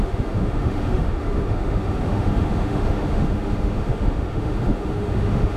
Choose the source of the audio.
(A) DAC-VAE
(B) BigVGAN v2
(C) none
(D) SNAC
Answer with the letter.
A